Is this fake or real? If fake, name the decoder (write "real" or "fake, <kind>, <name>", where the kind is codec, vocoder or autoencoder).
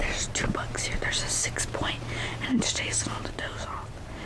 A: real